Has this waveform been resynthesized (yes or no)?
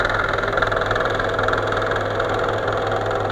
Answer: yes